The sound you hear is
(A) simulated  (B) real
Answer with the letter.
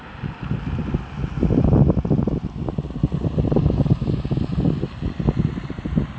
B